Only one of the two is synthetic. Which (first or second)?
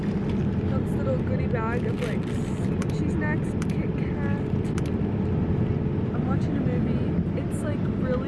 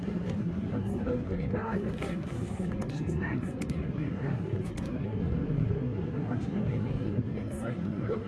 second